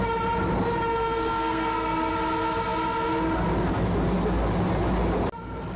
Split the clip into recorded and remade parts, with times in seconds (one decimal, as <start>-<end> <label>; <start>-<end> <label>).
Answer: 0.0-0.9 recorded; 0.9-2.1 remade; 2.1-5.8 recorded